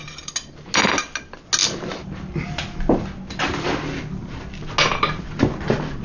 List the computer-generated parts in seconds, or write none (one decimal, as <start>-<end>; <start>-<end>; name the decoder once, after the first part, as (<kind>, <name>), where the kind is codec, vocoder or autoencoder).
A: none